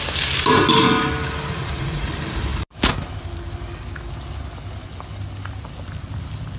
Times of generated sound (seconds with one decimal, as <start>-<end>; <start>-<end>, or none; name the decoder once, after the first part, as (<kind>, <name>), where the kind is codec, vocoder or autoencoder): 1.5-2.1 (vocoder, Vocos)